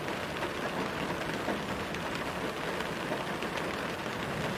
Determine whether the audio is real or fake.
real